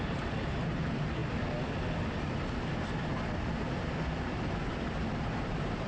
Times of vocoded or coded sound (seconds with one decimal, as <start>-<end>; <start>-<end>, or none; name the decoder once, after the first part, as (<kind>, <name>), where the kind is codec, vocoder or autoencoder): 0.0-1.2 (vocoder, BigVGAN v2); 4.7-5.9